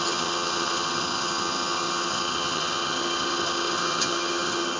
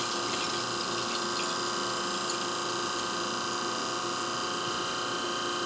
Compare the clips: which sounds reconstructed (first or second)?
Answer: first